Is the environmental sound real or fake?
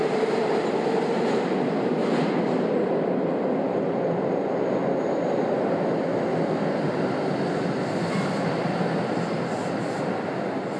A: real